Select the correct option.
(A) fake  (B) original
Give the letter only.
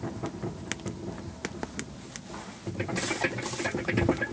B